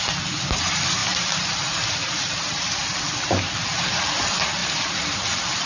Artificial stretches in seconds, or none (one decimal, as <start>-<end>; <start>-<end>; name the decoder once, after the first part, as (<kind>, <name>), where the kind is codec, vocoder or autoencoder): 1.0-4.1 (vocoder, BigVGAN v2); 4.6-5.7